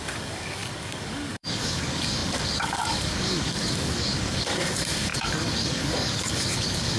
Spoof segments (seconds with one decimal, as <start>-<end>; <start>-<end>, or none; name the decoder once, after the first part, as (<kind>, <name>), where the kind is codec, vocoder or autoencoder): 0.0-7.0 (codec, DAC)